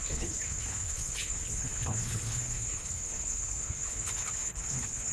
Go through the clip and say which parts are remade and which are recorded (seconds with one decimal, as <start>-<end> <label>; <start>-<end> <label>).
0.0-5.1 remade